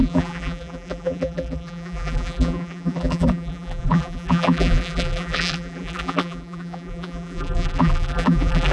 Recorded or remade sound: remade